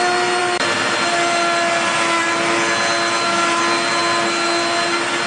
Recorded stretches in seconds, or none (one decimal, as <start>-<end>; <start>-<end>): 0.0-5.3